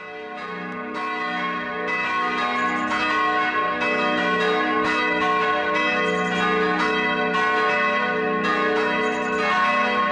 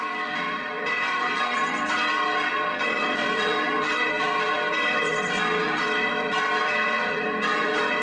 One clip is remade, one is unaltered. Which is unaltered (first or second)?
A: first